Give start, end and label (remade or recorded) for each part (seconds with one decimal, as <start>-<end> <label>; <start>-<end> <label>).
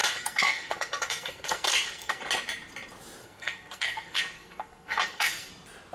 0.0-2.2 remade; 2.2-3.2 recorded; 3.2-5.5 remade; 5.5-5.9 recorded